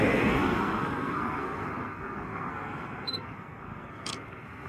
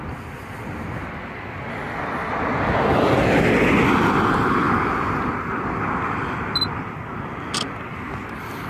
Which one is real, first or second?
second